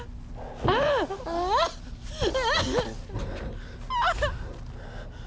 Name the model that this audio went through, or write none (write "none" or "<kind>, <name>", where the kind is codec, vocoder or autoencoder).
none